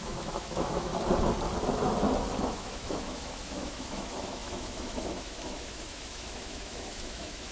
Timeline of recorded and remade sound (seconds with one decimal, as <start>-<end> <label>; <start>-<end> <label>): 0.0-0.9 remade; 0.9-2.5 recorded; 2.5-7.5 remade